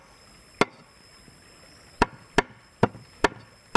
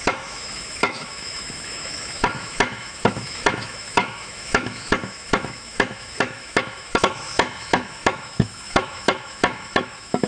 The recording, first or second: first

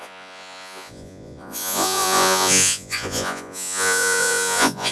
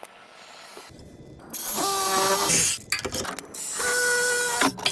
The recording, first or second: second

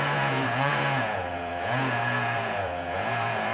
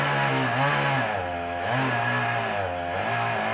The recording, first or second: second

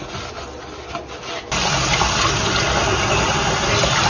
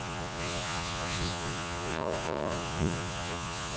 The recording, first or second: first